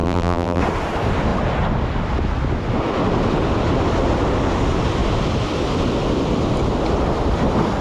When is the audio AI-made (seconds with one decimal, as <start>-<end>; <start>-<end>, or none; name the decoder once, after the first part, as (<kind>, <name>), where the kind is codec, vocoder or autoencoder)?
0.0-0.6 (vocoder, BigVGAN v2)